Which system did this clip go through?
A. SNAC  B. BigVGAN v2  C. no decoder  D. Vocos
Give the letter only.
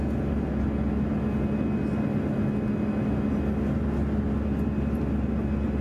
C